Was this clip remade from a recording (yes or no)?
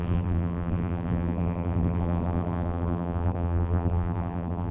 yes